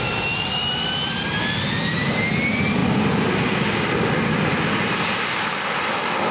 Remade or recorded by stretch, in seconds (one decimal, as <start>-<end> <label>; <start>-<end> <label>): 0.0-6.3 recorded